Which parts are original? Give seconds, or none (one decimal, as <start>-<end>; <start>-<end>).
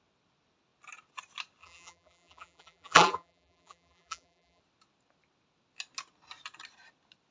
0.0-1.6; 4.6-7.3